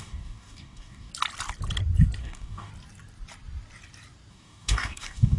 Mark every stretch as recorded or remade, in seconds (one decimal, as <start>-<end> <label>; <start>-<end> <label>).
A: 0.0-1.1 remade; 1.1-2.2 recorded; 2.2-2.7 remade; 2.7-4.3 recorded; 4.3-5.4 remade